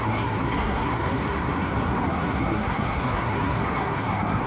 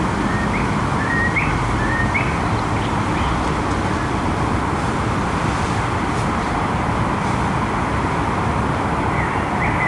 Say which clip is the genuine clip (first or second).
second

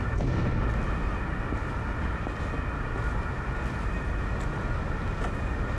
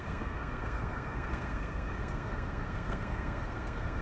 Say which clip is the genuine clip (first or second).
first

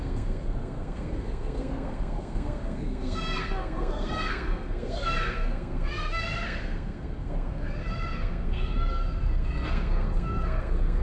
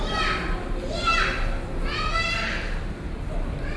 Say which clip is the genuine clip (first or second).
second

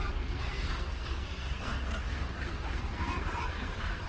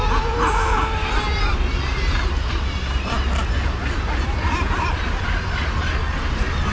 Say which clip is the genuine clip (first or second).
second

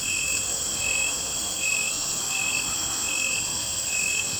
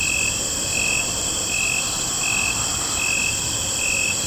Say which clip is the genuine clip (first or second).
second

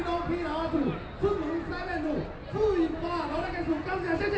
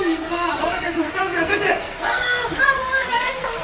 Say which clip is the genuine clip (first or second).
first